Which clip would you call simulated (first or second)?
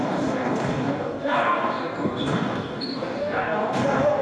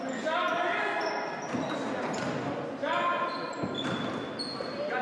first